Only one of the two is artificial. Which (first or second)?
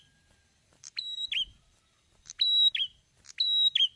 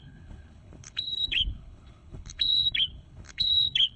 second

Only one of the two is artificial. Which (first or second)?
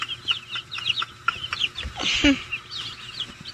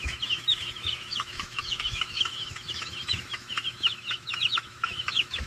second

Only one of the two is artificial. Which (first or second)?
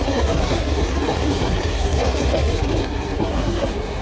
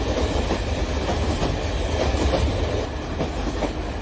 first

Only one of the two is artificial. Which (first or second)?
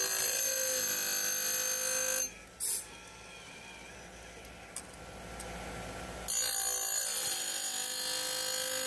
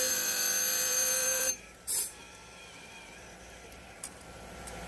second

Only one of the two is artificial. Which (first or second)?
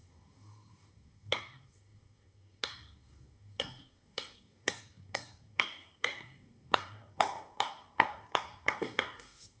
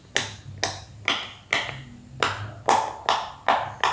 first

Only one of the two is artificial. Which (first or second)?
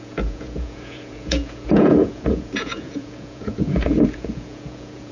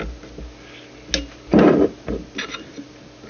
first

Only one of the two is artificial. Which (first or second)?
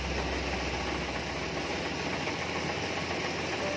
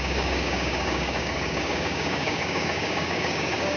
second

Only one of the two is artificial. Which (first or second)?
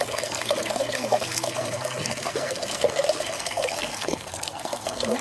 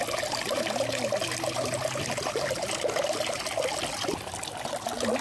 first